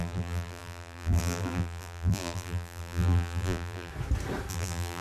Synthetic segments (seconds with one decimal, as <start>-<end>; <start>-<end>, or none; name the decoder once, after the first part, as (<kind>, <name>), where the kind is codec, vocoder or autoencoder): 0.0-3.9 (vocoder, BigVGAN v2); 4.5-5.0